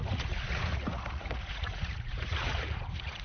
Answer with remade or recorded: remade